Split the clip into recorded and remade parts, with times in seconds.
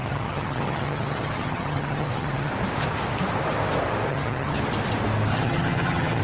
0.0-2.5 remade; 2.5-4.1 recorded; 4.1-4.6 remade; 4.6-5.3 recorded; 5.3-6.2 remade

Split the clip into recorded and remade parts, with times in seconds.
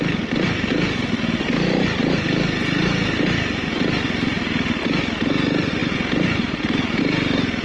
0.0-7.6 recorded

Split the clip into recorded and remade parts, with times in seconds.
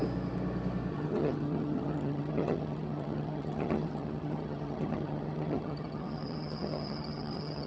0.0-0.9 recorded; 0.9-7.7 remade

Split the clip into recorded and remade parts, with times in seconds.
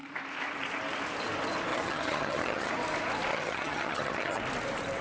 0.0-1.7 recorded; 1.7-2.7 remade; 2.7-3.3 recorded; 3.3-4.4 remade; 4.4-5.0 recorded